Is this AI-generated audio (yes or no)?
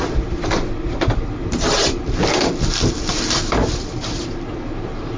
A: yes